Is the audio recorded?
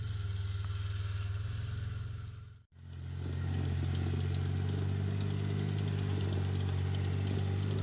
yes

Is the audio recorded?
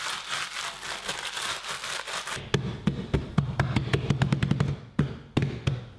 yes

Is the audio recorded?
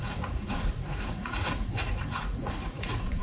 no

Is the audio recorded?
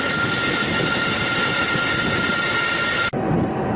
yes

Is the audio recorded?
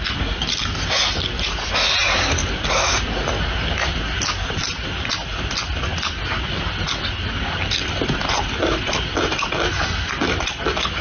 yes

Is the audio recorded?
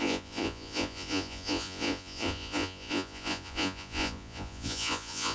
no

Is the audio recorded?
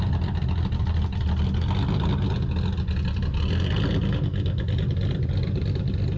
yes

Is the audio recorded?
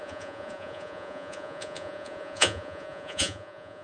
no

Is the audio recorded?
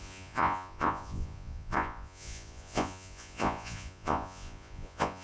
no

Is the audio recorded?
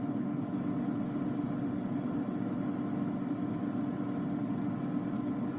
yes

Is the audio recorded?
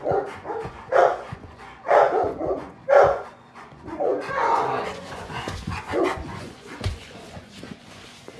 no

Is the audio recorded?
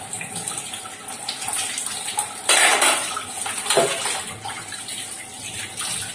yes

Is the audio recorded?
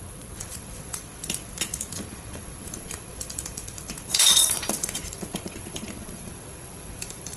no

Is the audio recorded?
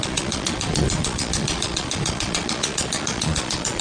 no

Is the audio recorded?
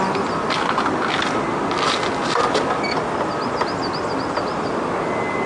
yes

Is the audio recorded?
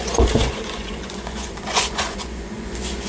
no